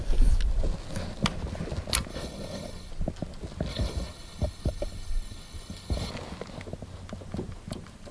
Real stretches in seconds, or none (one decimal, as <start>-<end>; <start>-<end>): 0.0-2.1; 2.9-3.7; 6.1-8.1